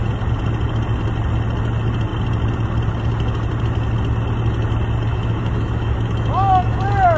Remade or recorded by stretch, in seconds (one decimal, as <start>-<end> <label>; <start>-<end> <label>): 0.0-5.1 recorded; 5.1-6.8 remade; 6.8-7.2 recorded